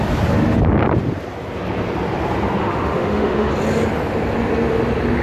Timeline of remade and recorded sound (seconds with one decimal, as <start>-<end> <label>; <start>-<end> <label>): 0.0-2.6 recorded; 2.6-3.5 remade; 3.5-5.2 recorded